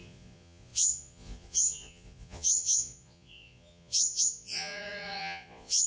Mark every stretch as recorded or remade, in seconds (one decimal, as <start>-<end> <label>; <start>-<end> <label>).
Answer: 0.0-5.9 remade